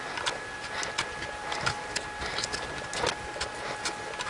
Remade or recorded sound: recorded